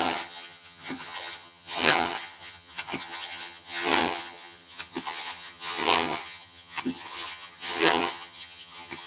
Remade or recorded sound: remade